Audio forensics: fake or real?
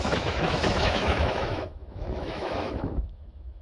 fake